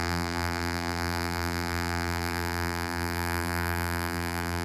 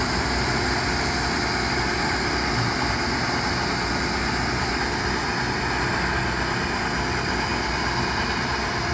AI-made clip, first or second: first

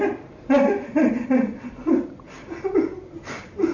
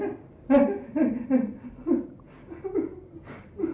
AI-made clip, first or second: first